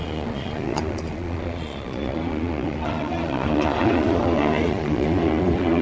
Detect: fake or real fake